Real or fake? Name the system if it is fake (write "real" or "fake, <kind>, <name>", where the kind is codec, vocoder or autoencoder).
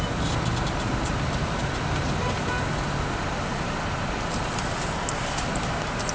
real